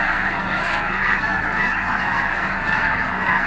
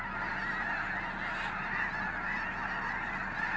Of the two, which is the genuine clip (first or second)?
second